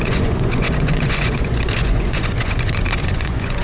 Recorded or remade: remade